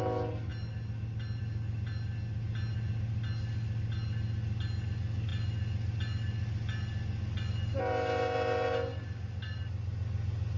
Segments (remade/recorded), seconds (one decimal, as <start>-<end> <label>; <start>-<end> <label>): 0.0-10.6 recorded